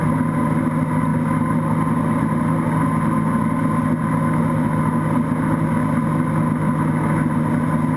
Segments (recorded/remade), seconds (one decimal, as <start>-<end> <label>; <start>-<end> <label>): 0.0-8.0 recorded